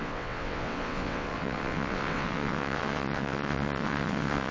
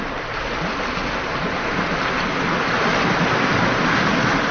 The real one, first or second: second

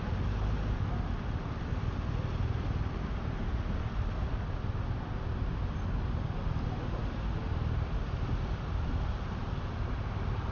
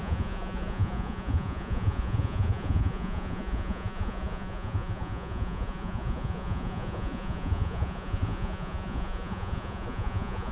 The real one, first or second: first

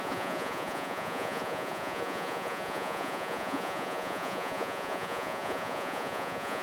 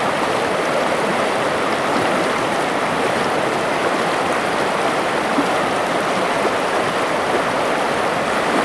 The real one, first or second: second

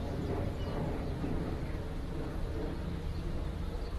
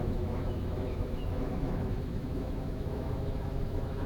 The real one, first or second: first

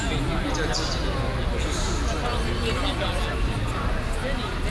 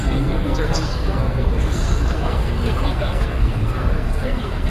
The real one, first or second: first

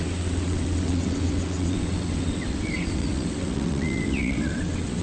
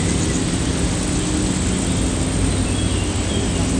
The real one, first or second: second